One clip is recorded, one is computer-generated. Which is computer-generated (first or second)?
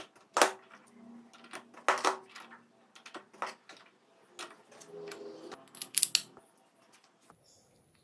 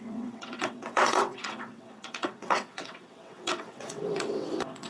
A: second